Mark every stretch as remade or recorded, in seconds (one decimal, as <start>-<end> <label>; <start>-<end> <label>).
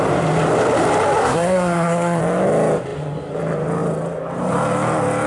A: 0.0-1.2 recorded; 1.2-2.2 remade; 2.2-5.3 recorded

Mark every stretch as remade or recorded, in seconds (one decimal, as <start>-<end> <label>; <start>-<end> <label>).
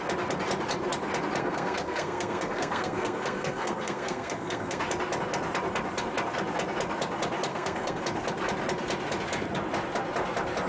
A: 0.0-1.4 recorded; 1.4-4.8 remade; 4.8-7.5 recorded; 7.5-8.0 remade; 8.0-10.7 recorded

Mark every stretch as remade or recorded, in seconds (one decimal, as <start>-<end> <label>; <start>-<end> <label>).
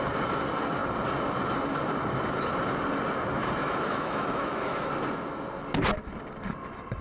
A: 0.0-3.6 recorded; 3.6-4.9 remade; 4.9-7.0 recorded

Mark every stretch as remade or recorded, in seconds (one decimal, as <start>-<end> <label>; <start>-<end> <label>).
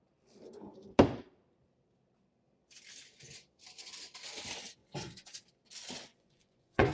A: 0.0-4.8 recorded; 4.8-5.4 remade; 5.4-6.1 recorded; 6.1-6.9 remade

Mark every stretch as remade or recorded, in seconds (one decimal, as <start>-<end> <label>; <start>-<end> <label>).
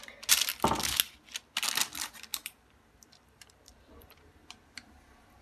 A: 0.0-2.3 recorded; 2.3-5.0 remade; 5.0-5.4 recorded